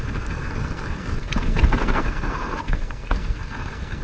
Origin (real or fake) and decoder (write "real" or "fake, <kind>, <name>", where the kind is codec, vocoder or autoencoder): fake, codec, SNAC